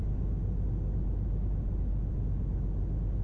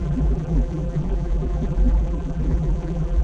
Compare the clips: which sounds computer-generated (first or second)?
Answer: second